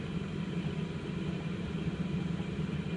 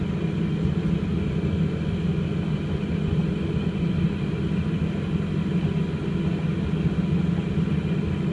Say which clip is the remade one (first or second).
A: first